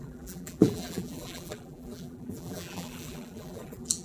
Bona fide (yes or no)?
no